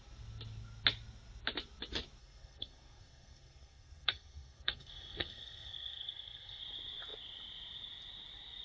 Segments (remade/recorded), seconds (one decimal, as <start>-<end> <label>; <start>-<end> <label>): 0.0-2.2 recorded; 2.2-6.6 remade; 6.6-8.6 recorded